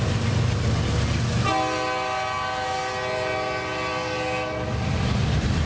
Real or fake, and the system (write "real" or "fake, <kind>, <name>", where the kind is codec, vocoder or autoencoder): real